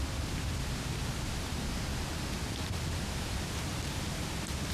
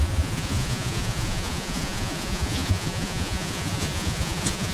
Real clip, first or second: first